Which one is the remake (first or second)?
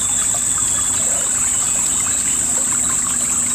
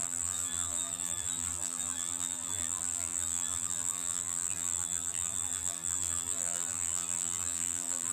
second